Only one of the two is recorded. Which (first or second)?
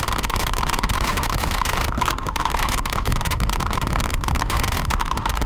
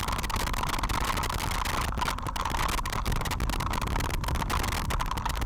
second